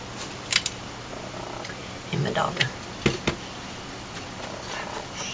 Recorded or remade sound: remade